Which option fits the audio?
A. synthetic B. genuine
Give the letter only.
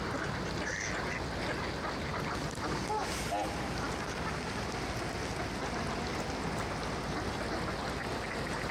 B